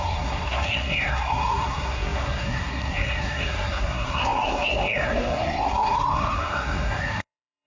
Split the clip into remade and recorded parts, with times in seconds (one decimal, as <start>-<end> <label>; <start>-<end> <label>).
0.0-7.7 remade